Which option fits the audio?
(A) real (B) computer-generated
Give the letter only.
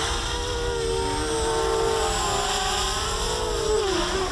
A